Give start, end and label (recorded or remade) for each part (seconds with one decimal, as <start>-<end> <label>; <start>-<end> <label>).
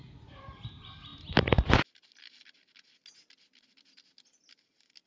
0.0-5.1 recorded